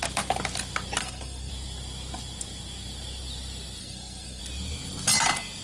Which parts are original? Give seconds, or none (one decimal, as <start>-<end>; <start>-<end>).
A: 0.0-1.0; 1.5-3.8; 4.4-5.6